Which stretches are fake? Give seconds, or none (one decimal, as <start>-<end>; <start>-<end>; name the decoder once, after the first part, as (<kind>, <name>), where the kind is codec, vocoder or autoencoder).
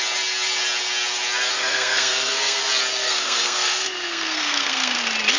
1.5-2.6 (codec, SNAC); 3.0-5.0